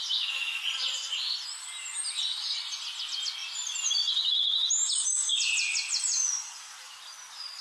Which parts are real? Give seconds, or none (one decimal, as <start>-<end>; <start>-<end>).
0.0-7.6